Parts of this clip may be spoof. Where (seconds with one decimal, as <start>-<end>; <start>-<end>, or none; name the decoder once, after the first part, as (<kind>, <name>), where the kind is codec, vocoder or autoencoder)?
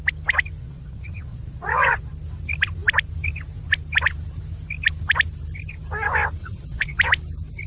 0.6-2.1 (vocoder, Vocos); 6.4-7.0